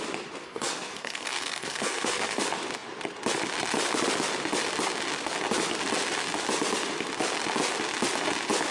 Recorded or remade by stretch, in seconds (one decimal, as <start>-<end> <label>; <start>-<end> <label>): 0.0-0.4 recorded; 0.4-2.4 remade; 2.4-8.7 recorded